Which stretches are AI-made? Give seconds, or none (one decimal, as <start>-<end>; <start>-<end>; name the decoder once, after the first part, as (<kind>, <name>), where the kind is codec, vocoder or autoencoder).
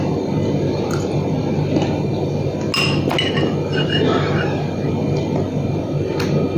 none